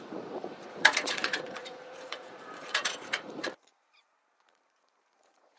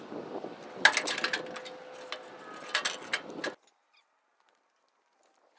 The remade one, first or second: first